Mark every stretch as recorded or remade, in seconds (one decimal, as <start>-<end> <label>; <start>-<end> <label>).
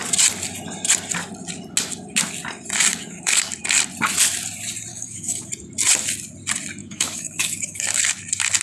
0.0-2.9 recorded; 2.9-3.5 remade; 3.5-4.9 recorded; 4.9-5.5 remade; 5.5-6.8 recorded; 6.8-8.0 remade; 8.0-8.6 recorded